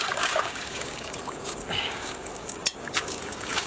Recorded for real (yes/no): no